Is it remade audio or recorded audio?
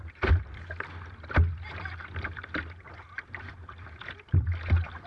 remade